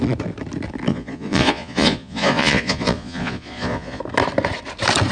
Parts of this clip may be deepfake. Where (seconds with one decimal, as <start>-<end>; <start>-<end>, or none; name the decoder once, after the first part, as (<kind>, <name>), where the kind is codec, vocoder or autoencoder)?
0.9-4.0 (vocoder, Vocos)